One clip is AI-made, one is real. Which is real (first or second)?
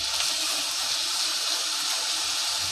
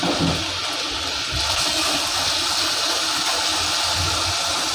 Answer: second